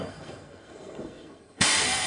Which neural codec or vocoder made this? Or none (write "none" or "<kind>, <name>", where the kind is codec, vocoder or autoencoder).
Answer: codec, SNAC